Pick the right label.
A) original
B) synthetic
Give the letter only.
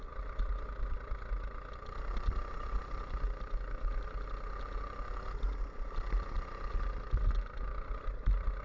A